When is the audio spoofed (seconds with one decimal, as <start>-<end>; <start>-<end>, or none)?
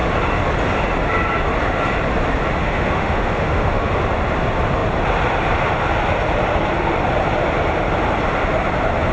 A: 2.6-3.9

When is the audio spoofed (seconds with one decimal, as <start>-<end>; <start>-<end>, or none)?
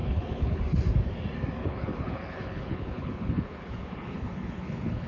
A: 0.0-0.6; 1.6-5.1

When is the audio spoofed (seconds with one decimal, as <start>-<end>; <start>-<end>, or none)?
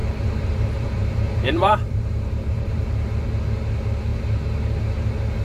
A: 0.0-3.2